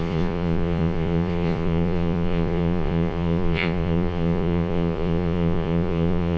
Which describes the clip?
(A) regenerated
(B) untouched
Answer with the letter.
A